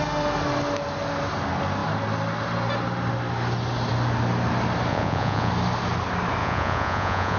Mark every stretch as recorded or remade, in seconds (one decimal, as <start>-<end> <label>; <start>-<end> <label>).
0.0-4.9 recorded; 4.9-5.5 remade; 5.5-6.4 recorded; 6.4-7.4 remade

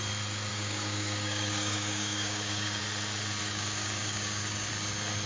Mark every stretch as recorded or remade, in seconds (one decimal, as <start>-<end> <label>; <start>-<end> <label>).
0.0-0.5 recorded; 0.5-2.8 remade; 2.8-3.4 recorded; 3.4-4.7 remade; 4.7-5.3 recorded

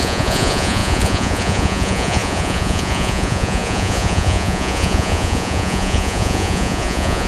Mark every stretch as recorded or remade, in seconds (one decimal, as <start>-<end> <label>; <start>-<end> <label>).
0.0-7.3 remade

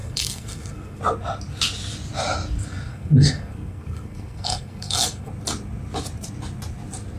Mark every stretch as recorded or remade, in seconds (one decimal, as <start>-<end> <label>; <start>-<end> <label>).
0.0-1.0 remade; 1.0-2.9 recorded; 2.9-5.3 remade; 5.3-7.2 recorded

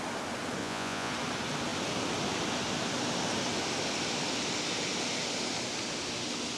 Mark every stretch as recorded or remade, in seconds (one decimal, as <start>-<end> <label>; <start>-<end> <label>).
0.0-0.6 recorded; 0.6-1.1 remade; 1.1-6.6 recorded

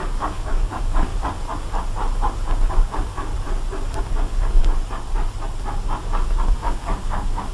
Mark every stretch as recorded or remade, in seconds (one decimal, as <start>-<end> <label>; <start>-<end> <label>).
0.0-1.1 remade; 1.1-2.7 recorded; 2.7-3.3 remade; 3.3-4.0 recorded; 4.0-4.6 remade; 4.6-6.0 recorded; 6.0-7.5 remade

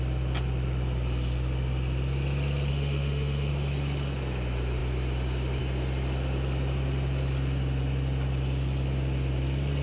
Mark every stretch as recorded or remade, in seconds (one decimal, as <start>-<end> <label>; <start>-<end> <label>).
0.0-2.7 recorded; 2.7-3.5 remade; 3.5-9.8 recorded